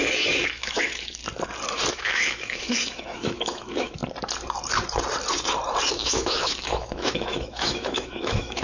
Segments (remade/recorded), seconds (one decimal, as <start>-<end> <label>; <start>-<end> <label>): 0.0-1.2 remade; 1.2-1.9 recorded; 1.9-4.0 remade; 4.0-5.9 recorded; 5.9-8.6 remade